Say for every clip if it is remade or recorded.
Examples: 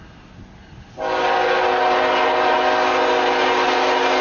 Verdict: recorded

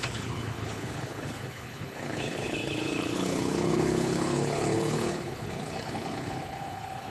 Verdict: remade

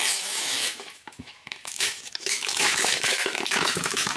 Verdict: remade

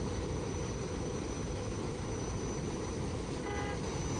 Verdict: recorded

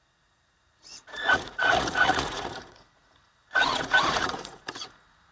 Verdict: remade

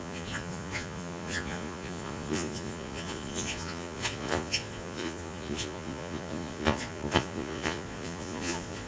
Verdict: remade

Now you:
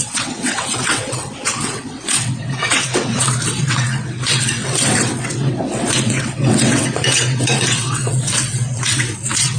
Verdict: remade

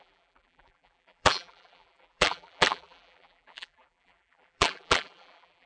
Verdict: remade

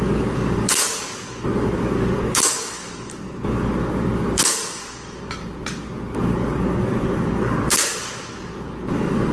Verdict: remade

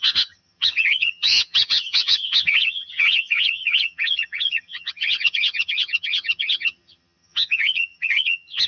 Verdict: remade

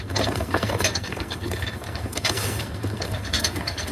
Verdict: remade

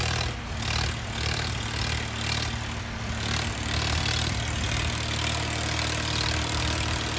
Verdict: recorded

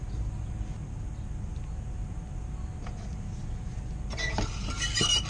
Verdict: recorded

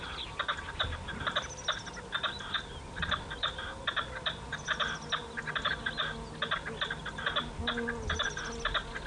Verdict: recorded